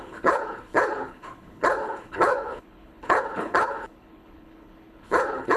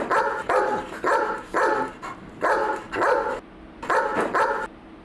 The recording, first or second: second